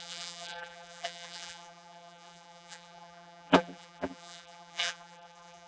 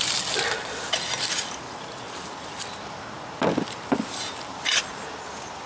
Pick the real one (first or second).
second